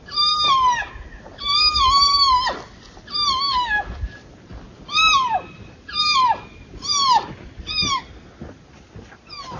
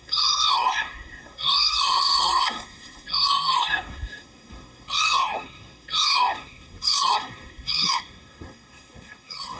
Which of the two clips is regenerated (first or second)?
second